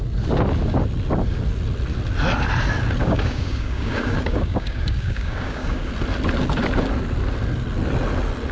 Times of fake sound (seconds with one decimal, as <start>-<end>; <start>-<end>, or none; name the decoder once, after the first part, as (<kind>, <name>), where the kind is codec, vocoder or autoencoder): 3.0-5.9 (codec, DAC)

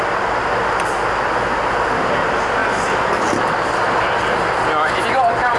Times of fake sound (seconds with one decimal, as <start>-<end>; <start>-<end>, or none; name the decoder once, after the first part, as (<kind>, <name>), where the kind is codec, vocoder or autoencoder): none

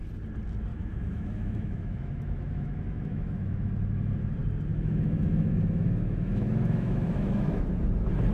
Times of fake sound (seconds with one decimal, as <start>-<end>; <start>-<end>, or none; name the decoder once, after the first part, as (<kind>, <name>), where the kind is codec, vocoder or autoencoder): 0.7-3.7 (autoencoder, DAC-VAE); 4.7-7.7